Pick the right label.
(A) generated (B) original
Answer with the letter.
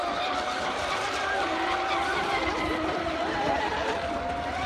B